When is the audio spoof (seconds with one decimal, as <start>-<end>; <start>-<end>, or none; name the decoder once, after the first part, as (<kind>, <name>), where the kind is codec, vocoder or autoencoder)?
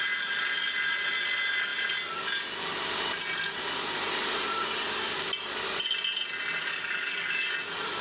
6.6-7.5 (codec, DAC)